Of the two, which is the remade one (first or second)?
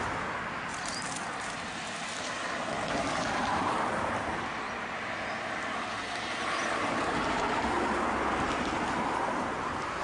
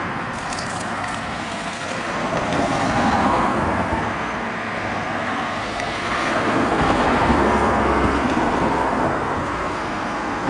second